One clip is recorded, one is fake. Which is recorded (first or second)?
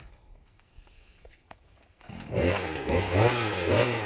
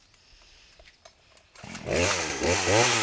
second